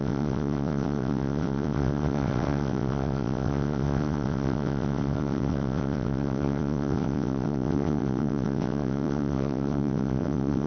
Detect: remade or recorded remade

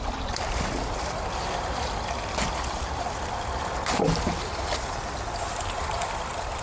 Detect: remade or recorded recorded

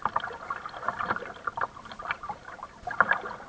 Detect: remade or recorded recorded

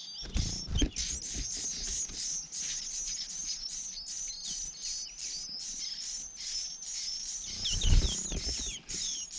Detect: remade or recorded recorded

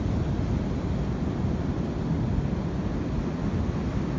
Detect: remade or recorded recorded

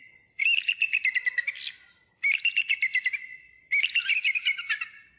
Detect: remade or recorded recorded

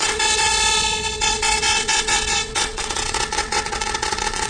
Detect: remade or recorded remade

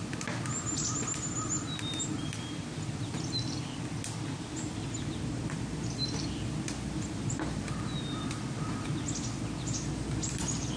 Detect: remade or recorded recorded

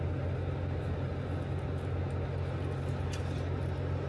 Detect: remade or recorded recorded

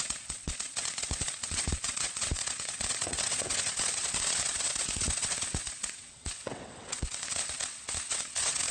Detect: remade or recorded remade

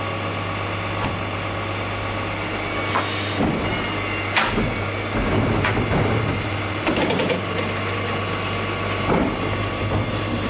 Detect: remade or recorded recorded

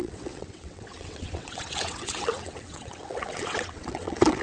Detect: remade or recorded remade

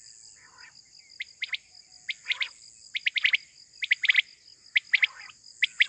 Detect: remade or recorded recorded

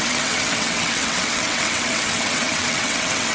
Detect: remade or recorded remade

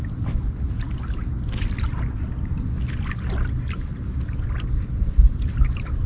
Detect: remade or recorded recorded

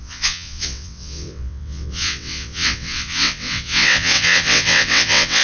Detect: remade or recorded remade